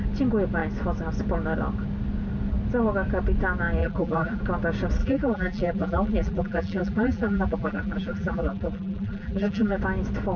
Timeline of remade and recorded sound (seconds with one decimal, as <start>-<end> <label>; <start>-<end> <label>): 0.0-3.8 recorded; 3.8-4.4 remade; 4.4-5.0 recorded; 5.0-9.8 remade; 9.8-10.4 recorded